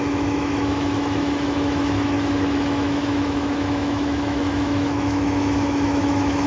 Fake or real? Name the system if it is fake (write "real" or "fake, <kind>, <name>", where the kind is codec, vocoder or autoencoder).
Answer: fake, autoencoder, DAC-VAE